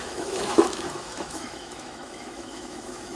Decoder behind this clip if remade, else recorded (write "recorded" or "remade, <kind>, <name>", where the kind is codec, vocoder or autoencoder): remade, autoencoder, DAC-VAE